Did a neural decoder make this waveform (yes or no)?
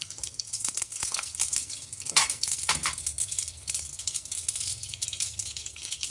yes